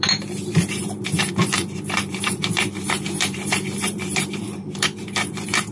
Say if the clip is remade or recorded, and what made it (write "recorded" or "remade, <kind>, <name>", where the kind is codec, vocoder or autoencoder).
remade, vocoder, BigVGAN v2